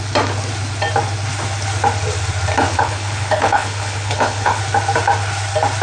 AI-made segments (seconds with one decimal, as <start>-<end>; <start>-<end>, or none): 2.7-4.6